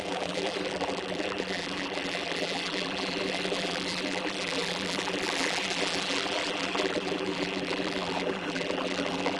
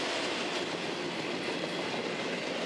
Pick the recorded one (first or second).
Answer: second